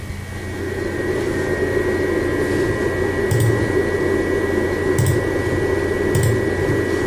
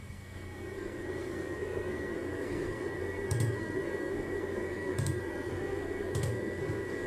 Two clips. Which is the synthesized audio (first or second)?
second